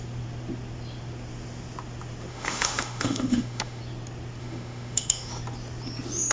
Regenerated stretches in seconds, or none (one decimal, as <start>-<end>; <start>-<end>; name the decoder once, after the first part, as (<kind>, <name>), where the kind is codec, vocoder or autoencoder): 2.3-3.8 (autoencoder, DAC-VAE); 4.4-5.3